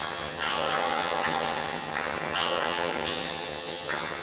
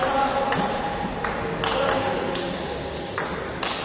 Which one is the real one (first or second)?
second